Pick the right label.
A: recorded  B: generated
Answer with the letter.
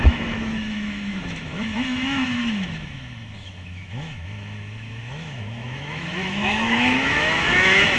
B